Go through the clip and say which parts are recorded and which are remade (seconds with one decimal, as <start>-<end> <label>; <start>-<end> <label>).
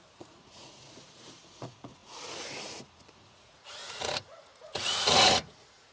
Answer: 0.0-5.9 remade